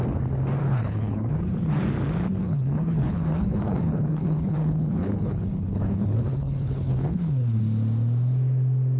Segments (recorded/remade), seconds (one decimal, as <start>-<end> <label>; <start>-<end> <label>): 0.0-0.6 recorded; 0.6-1.3 remade; 1.3-2.4 recorded; 2.4-7.6 remade; 7.6-9.0 recorded